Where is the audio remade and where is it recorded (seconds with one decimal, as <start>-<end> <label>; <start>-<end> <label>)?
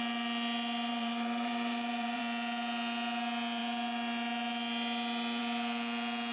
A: 0.0-0.9 recorded; 0.9-2.2 remade; 2.2-6.3 recorded